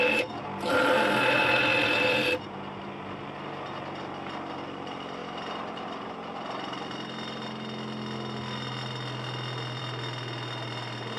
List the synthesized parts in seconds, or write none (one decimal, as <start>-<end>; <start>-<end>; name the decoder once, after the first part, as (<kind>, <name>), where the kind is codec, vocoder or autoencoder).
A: none